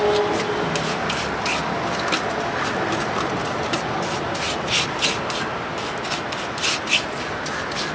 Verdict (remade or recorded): recorded